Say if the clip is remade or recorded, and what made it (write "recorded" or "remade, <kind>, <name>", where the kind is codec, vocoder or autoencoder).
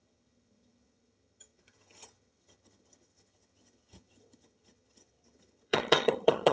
remade, vocoder, HiFi-GAN